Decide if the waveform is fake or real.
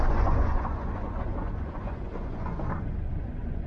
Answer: fake